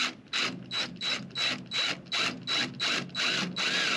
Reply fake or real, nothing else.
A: real